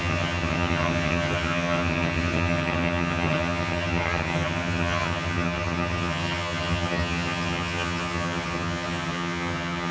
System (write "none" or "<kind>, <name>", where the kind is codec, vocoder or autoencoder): vocoder, HiFi-GAN